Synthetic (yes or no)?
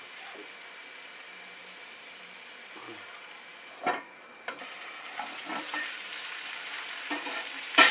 yes